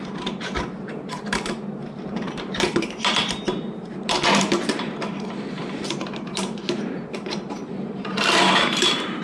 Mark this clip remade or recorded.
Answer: remade